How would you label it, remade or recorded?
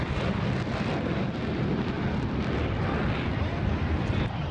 recorded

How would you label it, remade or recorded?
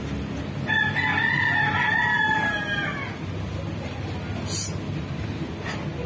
recorded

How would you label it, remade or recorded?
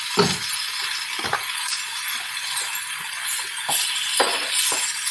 recorded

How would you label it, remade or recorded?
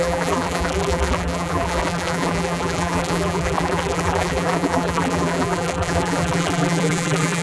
remade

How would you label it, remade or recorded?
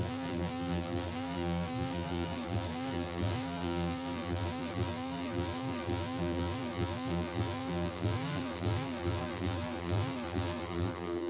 remade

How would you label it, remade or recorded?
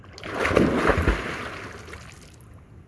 recorded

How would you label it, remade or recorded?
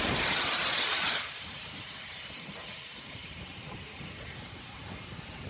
remade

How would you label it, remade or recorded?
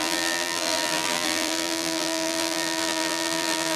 remade